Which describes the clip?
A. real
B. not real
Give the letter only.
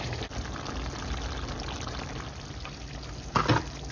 A